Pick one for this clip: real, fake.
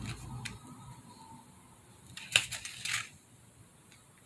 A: real